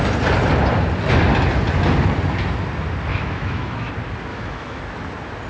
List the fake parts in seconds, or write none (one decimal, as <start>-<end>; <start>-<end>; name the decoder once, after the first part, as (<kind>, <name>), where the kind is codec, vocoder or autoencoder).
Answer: 3.1-3.9 (autoencoder, DAC-VAE); 4.3-4.8